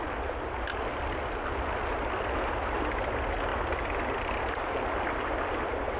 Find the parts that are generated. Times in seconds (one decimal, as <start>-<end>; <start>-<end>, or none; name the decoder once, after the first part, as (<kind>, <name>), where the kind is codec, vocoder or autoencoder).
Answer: none